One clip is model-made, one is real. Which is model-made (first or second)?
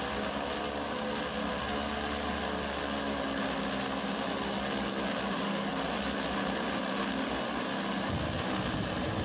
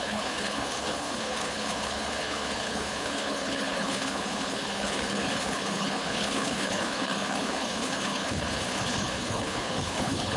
second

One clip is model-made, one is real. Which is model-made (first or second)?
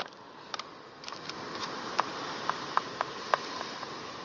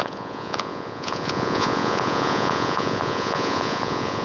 second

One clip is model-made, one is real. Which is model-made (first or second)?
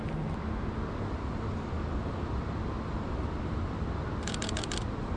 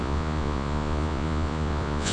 second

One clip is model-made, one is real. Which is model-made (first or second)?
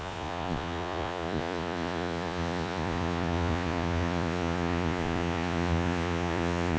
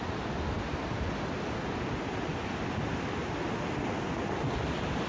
first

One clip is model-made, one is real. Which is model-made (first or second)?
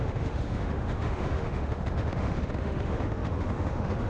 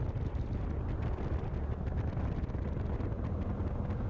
first